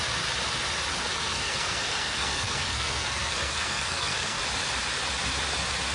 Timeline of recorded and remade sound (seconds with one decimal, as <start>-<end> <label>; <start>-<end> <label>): 0.0-0.9 recorded; 0.9-4.4 remade; 4.4-5.9 recorded